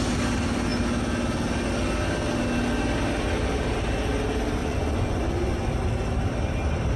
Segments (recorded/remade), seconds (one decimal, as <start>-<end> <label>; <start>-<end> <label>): 0.0-4.6 recorded; 4.6-5.7 remade; 5.7-7.0 recorded